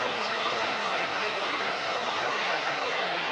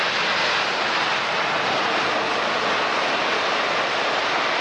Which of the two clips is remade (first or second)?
first